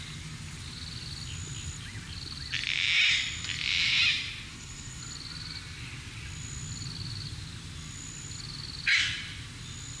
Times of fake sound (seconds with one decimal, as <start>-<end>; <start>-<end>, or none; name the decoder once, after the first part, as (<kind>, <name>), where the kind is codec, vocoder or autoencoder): 4.5-5.0 (codec, HILCodec)